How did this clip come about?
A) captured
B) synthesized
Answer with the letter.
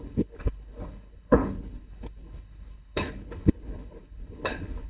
B